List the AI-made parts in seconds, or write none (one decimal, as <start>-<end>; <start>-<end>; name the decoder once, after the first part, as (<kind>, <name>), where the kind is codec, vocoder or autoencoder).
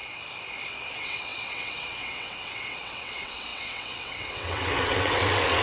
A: 0.8-5.6 (vocoder, WaveNeXt)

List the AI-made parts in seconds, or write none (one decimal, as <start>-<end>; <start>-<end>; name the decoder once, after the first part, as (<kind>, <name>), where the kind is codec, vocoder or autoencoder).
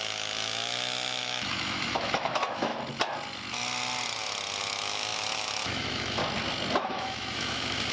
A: 0.0-2.7 (autoencoder, DAC-VAE); 4.6-6.2; 6.8-7.9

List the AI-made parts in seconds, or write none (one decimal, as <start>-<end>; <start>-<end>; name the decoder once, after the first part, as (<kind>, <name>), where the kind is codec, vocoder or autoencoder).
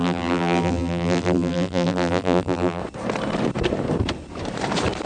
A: 0.0-2.8 (vocoder, BigVGAN v2)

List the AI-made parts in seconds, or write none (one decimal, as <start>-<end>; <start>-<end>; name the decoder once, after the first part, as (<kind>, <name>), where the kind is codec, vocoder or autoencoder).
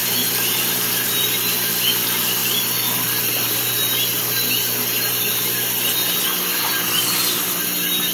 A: 0.0-1.7 (vocoder, BigVGAN v2)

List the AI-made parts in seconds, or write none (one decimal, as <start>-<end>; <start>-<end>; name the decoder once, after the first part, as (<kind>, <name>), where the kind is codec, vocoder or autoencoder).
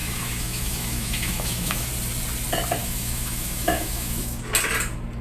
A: 0.0-1.9 (autoencoder, DAC-VAE); 2.8-4.4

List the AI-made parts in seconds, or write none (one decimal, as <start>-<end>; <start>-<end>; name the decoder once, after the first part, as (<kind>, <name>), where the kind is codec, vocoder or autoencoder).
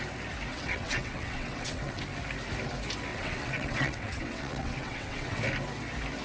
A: 0.5-2.0 (vocoder, WaveNeXt); 3.1-5.4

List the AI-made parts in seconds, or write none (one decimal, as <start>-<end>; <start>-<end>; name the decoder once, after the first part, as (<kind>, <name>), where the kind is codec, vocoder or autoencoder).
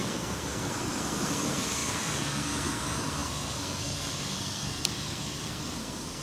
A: 0.0-6.2 (codec, SNAC)